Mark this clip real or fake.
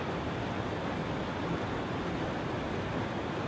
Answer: real